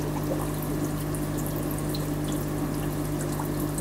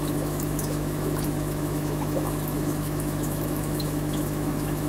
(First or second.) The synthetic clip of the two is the second